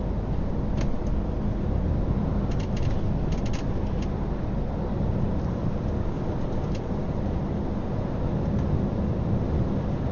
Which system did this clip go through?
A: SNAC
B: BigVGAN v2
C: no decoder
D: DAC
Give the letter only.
C